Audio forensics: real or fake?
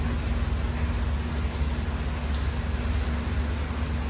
real